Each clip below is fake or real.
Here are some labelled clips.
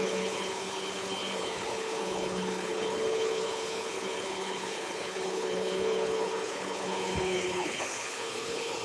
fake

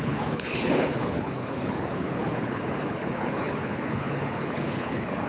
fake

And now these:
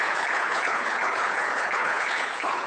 fake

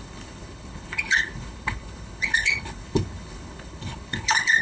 fake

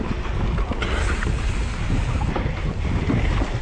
real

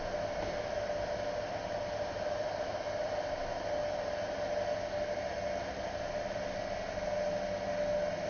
real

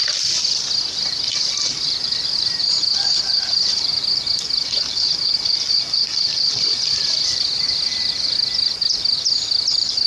real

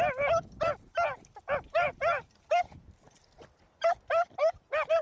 real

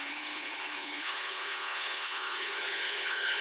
fake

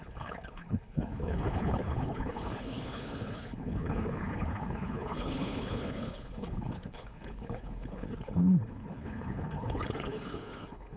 fake